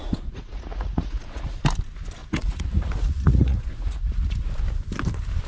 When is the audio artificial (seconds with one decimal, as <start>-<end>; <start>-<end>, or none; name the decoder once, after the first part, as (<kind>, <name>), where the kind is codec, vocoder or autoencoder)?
0.0-1.6 (vocoder, Vocos); 2.2-4.5